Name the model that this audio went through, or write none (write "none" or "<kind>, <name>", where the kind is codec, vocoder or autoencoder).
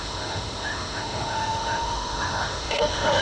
autoencoder, DAC-VAE